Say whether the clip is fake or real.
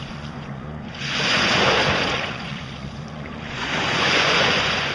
fake